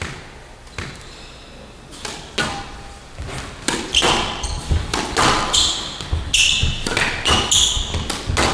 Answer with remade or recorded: recorded